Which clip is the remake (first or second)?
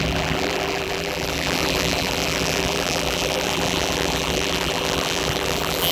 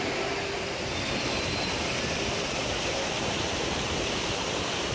first